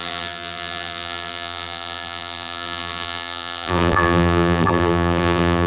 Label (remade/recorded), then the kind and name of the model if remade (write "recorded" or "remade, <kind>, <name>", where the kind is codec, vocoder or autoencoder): remade, vocoder, BigVGAN v2